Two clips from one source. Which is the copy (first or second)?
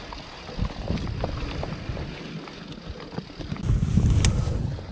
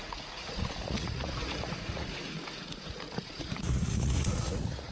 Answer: second